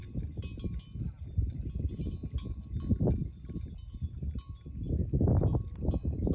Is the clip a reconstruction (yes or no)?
no